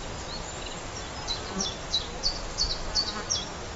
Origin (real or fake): real